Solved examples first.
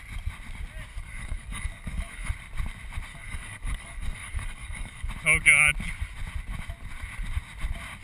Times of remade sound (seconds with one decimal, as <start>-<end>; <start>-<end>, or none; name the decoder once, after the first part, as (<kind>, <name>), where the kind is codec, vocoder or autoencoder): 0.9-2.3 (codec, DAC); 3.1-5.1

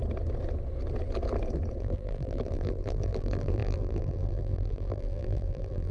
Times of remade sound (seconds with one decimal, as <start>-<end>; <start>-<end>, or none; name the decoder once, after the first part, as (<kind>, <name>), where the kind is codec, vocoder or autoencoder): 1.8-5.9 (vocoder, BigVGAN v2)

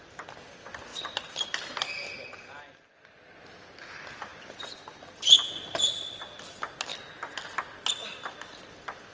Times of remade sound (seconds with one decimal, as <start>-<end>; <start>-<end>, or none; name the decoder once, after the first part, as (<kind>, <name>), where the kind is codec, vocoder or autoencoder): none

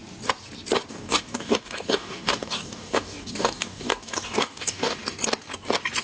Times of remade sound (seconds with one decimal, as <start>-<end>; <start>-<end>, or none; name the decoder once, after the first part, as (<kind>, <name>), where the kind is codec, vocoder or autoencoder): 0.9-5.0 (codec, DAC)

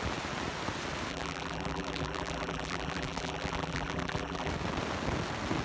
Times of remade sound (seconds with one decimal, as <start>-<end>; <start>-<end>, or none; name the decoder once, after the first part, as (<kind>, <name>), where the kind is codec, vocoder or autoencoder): 1.1-4.5 (vocoder, BigVGAN v2)

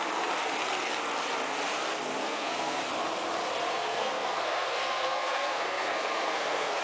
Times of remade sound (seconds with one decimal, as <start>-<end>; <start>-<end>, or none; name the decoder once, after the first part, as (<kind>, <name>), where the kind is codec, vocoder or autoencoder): 2.2-2.8 (codec, SNAC); 3.7-6.8

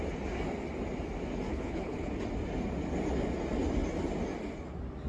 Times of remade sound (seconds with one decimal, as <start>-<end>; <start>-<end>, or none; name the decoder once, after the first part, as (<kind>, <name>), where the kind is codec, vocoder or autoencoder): 1.5-2.1 (codec, HILCodec)